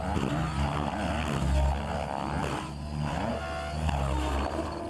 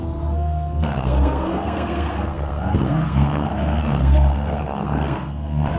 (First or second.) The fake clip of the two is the second